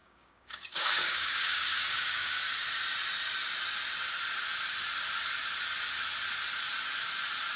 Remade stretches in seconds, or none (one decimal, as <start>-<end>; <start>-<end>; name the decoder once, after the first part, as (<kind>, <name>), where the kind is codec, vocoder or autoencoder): 0.0-2.4 (codec, DAC)